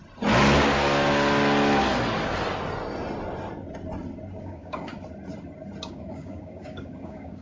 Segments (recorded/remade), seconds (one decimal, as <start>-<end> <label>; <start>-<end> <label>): 0.0-4.4 recorded; 4.4-4.9 remade; 4.9-5.9 recorded; 5.9-7.4 remade